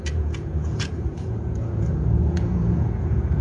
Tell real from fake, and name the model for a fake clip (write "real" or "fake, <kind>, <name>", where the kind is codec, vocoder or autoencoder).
fake, vocoder, Vocos